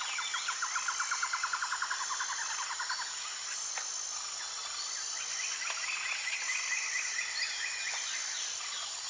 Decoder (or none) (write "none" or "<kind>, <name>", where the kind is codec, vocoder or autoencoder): none